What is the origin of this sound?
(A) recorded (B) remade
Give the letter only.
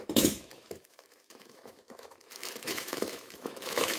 B